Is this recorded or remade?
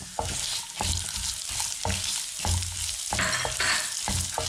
recorded